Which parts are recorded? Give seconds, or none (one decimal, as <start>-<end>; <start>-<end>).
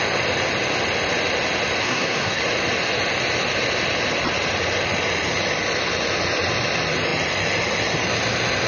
0.0-1.8; 2.4-8.7